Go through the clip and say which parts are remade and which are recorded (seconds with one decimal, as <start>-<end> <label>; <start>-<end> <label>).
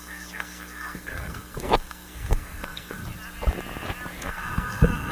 0.0-3.0 remade; 3.0-4.2 recorded; 4.2-5.1 remade